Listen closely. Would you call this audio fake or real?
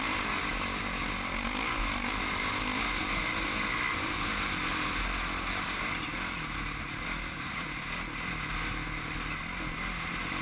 real